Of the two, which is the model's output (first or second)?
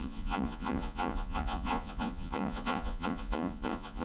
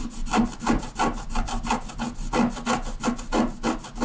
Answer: first